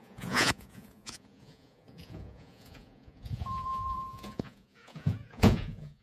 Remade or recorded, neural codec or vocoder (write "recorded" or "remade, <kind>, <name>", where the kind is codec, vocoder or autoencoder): remade, vocoder, Vocos